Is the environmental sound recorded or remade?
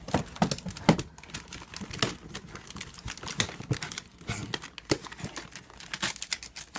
recorded